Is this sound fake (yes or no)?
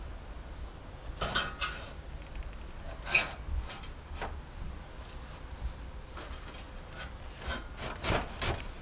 no